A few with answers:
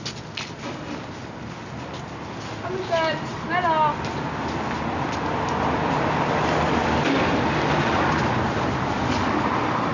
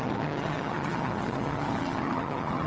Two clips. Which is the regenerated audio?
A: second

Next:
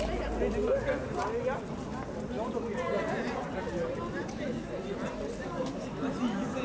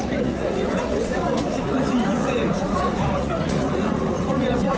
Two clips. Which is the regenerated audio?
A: second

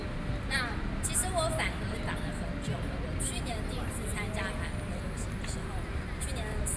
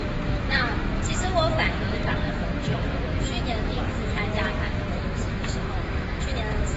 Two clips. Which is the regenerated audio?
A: second